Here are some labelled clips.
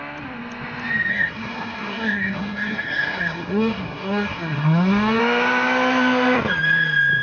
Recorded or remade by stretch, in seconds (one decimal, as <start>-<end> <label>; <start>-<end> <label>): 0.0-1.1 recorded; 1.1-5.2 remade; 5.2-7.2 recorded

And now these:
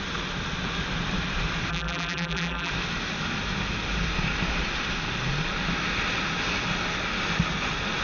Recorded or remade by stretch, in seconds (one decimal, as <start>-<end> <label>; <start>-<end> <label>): 0.0-1.7 recorded; 1.7-2.7 remade; 2.7-8.0 recorded

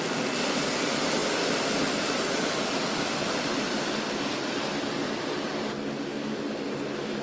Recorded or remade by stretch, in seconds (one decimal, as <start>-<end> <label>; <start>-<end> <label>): 0.0-7.2 recorded

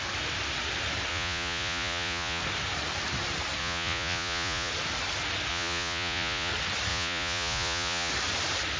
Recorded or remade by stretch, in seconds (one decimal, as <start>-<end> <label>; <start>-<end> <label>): 0.0-1.1 recorded; 1.1-2.4 remade; 2.4-3.6 recorded; 3.6-4.7 remade; 4.7-5.5 recorded; 5.5-6.5 remade; 6.5-6.9 recorded; 6.9-8.1 remade; 8.1-8.8 recorded

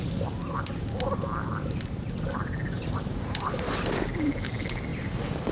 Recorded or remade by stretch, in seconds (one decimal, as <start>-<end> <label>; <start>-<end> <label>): 0.0-1.5 recorded; 1.5-3.7 remade; 3.7-4.9 recorded; 4.9-5.5 remade

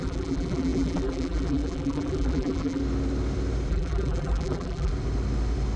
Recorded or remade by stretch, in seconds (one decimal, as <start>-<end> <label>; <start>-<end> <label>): 0.0-2.8 remade; 2.8-3.7 recorded; 3.7-4.9 remade; 4.9-5.8 recorded

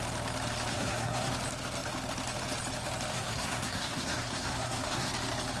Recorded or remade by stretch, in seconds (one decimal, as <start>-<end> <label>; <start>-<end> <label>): 0.0-0.7 recorded; 0.7-1.3 remade; 1.3-3.1 recorded; 3.1-5.1 remade; 5.1-5.6 recorded